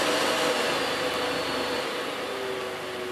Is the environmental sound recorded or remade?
recorded